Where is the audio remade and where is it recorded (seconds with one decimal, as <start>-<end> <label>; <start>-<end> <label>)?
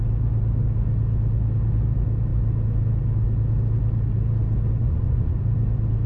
0.0-4.8 recorded; 4.8-5.4 remade; 5.4-6.1 recorded